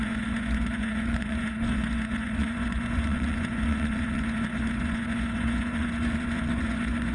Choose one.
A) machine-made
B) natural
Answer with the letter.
A